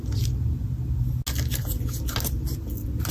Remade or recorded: recorded